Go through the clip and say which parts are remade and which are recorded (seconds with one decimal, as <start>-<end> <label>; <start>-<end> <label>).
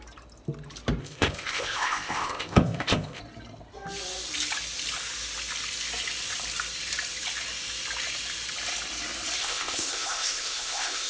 0.0-1.0 recorded; 1.0-3.2 remade; 3.2-9.4 recorded; 9.4-11.1 remade